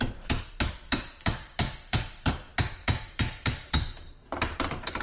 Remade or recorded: remade